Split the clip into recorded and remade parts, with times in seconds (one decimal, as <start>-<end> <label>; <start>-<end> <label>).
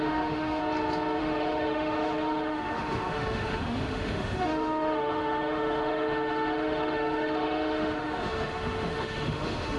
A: 0.0-0.6 remade; 0.6-1.2 recorded; 1.2-9.8 remade